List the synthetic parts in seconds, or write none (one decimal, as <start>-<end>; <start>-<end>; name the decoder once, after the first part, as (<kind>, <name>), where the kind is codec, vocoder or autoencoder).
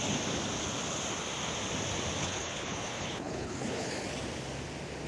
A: 2.2-3.9 (codec, HILCodec)